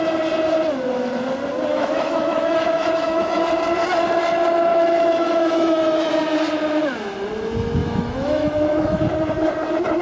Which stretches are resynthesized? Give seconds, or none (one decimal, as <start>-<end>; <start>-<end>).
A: 1.7-3.4; 4.7-6.1; 7.8-9.0